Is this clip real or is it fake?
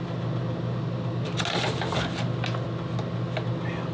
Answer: real